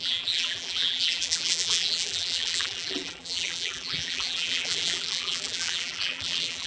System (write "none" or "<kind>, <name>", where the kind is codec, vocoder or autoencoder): vocoder, BigVGAN v2